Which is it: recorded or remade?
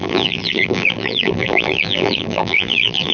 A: remade